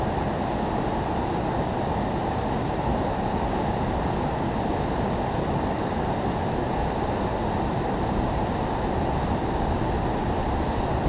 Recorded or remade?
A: recorded